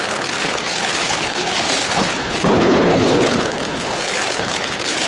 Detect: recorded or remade remade